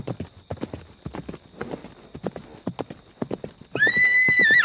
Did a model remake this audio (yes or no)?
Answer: no